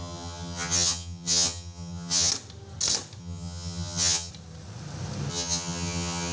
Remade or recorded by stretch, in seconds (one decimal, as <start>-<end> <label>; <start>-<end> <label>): 0.0-2.3 remade; 2.3-3.2 recorded; 3.2-4.3 remade; 4.3-5.3 recorded; 5.3-6.3 remade